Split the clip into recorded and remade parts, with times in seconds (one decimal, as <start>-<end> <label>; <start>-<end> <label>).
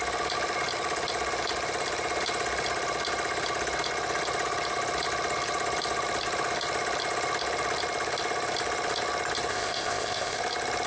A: 0.0-9.5 recorded; 9.5-10.4 remade; 10.4-10.9 recorded